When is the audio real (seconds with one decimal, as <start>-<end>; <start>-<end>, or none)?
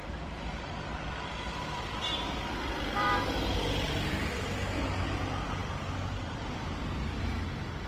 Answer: 4.3-5.6; 7.2-7.9